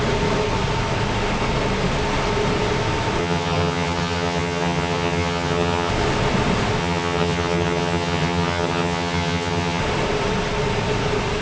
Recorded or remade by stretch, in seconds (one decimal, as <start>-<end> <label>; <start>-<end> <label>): 0.0-3.2 recorded; 3.2-5.9 remade; 5.9-6.8 recorded; 6.8-9.8 remade; 9.8-11.4 recorded